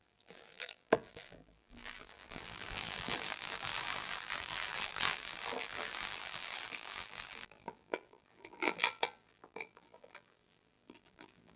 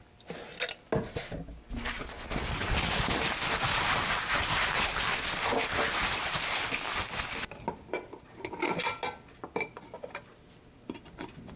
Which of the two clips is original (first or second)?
second